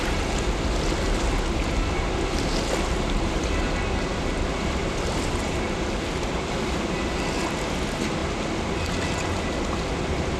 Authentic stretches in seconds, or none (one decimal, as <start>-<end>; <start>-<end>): 0.0-4.8; 6.3-10.4